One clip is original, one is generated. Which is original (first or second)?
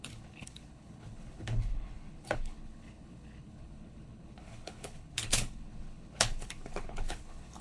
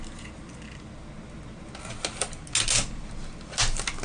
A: second